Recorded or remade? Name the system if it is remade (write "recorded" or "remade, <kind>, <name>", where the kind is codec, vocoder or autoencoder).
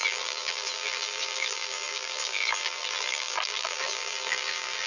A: remade, vocoder, BigVGAN v2